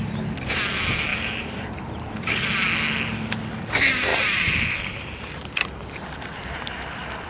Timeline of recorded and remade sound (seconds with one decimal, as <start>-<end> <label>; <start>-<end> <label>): 0.0-1.1 recorded; 1.1-2.1 remade; 2.1-4.1 recorded; 4.1-7.3 remade